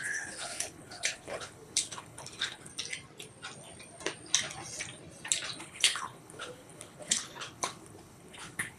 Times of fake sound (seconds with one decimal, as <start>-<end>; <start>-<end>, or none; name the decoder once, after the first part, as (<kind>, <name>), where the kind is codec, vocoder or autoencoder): 0.0-2.7 (codec, HILCodec); 5.6-8.8